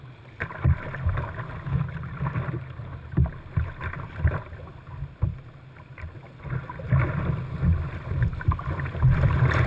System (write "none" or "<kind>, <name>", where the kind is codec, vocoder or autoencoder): none